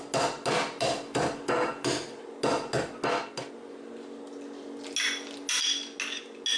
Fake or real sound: real